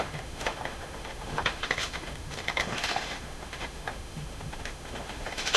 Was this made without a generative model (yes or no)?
no